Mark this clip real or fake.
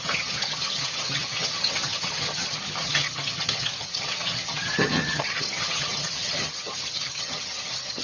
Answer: fake